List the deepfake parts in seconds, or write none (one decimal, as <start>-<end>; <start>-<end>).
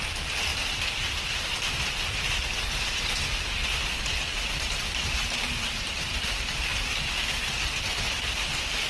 none